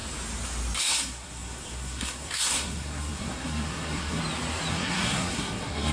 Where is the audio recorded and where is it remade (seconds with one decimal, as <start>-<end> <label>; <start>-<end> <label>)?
0.0-0.8 recorded; 0.8-4.2 remade; 4.2-4.7 recorded; 4.7-5.9 remade